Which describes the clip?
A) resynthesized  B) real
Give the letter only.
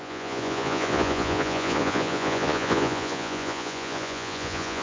A